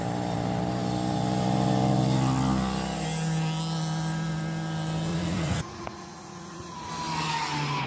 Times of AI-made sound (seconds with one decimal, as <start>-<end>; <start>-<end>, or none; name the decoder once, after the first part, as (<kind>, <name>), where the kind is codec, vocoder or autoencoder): 5.1-6.9 (vocoder, Vocos)

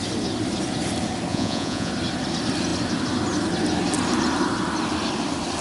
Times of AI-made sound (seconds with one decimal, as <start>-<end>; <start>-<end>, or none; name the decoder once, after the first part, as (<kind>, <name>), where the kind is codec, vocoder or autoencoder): 1.3-1.9 (vocoder, Vocos)

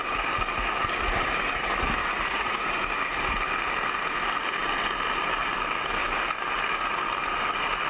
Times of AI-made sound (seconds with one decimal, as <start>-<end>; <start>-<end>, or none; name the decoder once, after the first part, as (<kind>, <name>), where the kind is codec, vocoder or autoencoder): 2.0-2.8 (vocoder, Vocos)